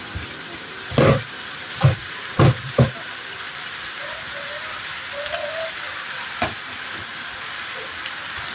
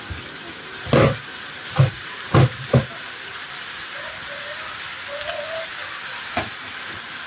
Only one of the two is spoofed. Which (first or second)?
first